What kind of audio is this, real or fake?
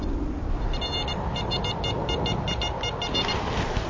real